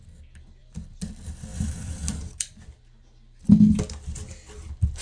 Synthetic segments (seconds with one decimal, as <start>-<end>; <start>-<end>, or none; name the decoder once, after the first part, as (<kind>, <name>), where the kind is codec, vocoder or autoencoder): none